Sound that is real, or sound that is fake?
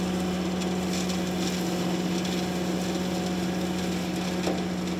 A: real